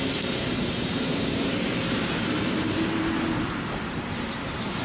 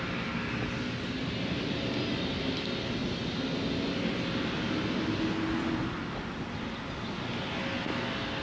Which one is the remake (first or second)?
first